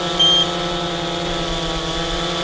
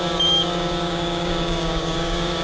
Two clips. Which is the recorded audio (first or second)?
first